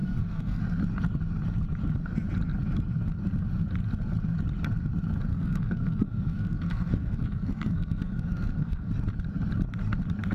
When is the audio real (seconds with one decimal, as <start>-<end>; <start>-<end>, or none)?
0.6-5.3; 8.9-10.3